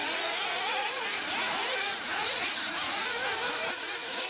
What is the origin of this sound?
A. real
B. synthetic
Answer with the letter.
B